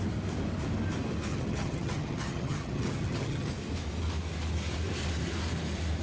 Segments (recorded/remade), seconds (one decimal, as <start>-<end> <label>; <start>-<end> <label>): 0.0-1.3 recorded; 1.3-3.5 remade; 3.5-6.0 recorded